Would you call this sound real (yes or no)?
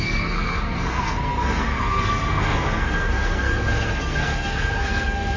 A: no